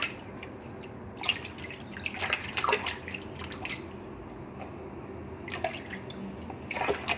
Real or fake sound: real